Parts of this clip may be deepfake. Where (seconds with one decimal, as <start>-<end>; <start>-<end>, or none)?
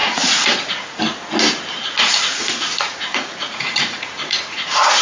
0.0-1.0; 1.8-5.0